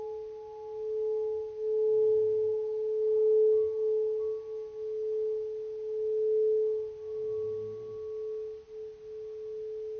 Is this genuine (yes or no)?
yes